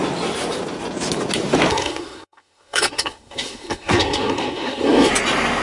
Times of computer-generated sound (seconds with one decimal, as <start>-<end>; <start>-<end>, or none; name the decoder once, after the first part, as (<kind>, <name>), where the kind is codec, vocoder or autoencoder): 1.7-5.1 (codec, SNAC)